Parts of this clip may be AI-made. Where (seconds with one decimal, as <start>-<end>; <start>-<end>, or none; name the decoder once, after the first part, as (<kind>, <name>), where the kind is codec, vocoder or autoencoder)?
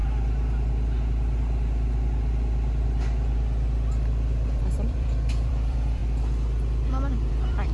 4.6-6.0 (vocoder, BigVGAN v2); 7.3-7.7